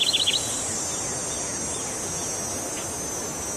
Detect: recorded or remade recorded